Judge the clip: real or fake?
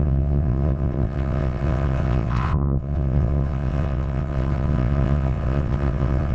fake